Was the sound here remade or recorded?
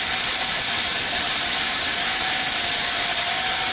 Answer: recorded